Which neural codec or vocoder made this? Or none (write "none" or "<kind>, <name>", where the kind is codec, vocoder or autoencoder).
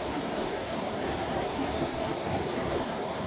codec, SNAC